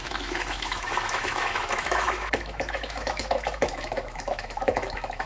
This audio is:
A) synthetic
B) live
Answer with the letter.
A